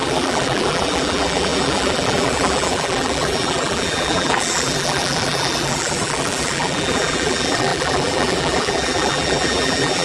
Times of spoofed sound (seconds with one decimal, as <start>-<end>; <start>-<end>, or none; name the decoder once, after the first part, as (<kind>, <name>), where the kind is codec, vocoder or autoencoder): 0.0-10.0 (vocoder, BigVGAN v2)